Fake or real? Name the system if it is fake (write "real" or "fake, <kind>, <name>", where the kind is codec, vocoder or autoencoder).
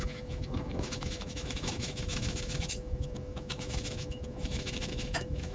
fake, autoencoder, DAC-VAE